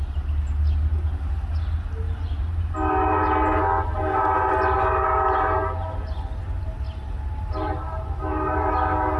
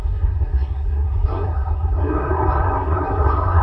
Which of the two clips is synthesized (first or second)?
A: second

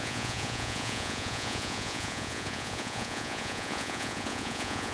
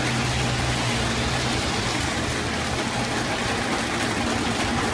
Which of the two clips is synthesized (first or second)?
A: first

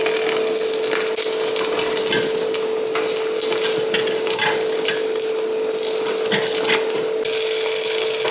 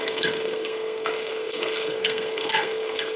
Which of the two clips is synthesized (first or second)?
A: second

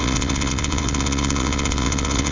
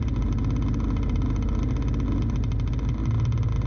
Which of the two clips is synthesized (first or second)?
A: first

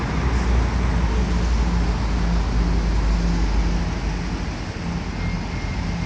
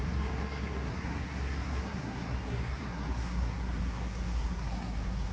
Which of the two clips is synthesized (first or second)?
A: second